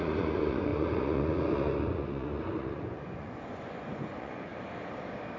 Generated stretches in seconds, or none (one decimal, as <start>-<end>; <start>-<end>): 0.0-4.5